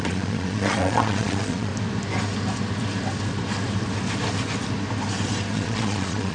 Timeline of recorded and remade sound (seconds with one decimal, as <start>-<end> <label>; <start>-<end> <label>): 0.0-1.7 remade; 1.7-5.5 recorded; 5.5-6.3 remade